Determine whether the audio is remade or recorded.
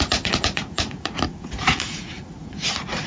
remade